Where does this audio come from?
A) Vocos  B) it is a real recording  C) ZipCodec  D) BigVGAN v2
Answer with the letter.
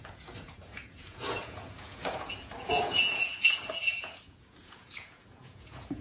A